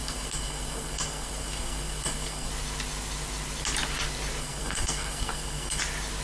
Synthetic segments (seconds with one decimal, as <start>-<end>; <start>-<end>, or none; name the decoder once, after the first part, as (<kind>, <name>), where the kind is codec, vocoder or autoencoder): 0.0-2.5 (codec, SNAC); 4.4-5.8